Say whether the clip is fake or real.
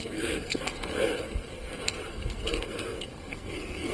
fake